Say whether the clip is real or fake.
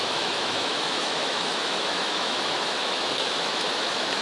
fake